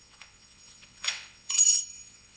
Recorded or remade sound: remade